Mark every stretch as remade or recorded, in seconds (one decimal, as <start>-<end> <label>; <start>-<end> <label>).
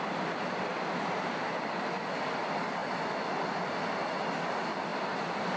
0.0-2.8 recorded; 2.8-3.3 remade; 3.3-4.9 recorded; 4.9-5.6 remade